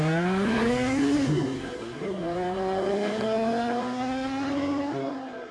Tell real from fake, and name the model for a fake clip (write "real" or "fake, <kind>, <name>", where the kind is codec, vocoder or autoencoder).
fake, codec, SNAC